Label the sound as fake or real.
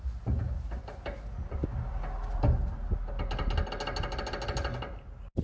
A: real